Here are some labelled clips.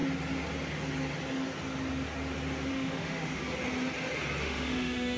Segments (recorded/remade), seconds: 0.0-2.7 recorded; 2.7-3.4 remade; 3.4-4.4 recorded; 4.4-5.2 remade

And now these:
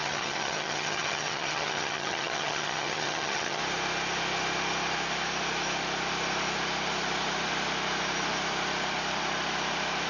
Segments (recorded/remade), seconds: 0.0-3.6 remade; 3.6-10.1 recorded

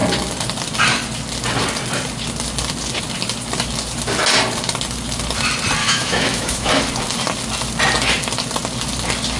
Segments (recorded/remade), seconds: 0.0-5.8 recorded; 5.8-6.7 remade; 6.7-9.4 recorded

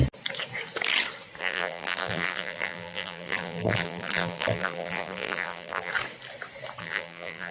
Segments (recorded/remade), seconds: 0.0-1.4 recorded; 1.4-5.9 remade; 5.9-6.8 recorded; 6.8-7.5 remade

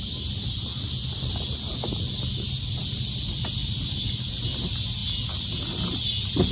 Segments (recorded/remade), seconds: 0.0-6.5 recorded